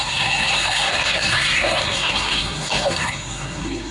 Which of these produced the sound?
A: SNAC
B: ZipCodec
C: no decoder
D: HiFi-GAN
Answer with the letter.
A